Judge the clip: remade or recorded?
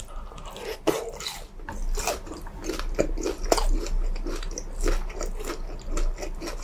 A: recorded